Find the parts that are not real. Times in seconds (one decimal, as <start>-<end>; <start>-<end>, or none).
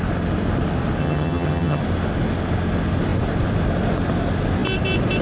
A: 1.0-1.8